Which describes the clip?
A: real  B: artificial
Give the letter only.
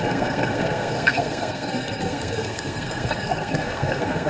B